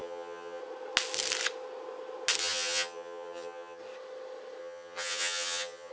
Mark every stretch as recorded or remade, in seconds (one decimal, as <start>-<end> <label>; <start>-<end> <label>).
0.0-0.6 remade; 0.6-2.4 recorded; 2.4-3.8 remade; 3.8-4.6 recorded; 4.6-5.9 remade